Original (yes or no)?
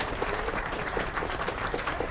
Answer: no